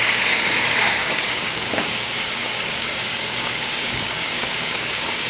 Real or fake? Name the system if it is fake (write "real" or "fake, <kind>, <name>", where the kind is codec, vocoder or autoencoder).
fake, codec, DAC